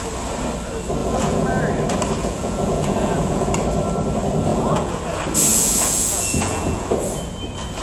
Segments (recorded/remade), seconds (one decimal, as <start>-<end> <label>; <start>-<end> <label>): 0.0-1.0 recorded; 1.0-1.6 remade; 1.6-2.2 recorded; 2.2-3.5 remade; 3.5-4.5 recorded; 4.5-5.0 remade; 5.0-5.5 recorded; 5.5-6.9 remade; 6.9-7.8 recorded